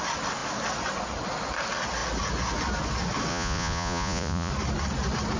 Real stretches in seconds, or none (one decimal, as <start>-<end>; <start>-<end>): 0.0-3.3; 4.5-5.4